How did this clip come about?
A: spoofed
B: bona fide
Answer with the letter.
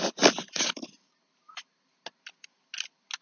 B